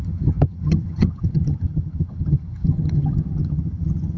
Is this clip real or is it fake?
fake